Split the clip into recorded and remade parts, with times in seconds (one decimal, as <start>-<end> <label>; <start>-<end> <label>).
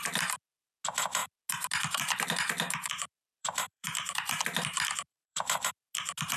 0.0-3.4 recorded; 3.4-4.4 remade; 4.4-5.1 recorded; 5.1-5.7 remade; 5.7-6.4 recorded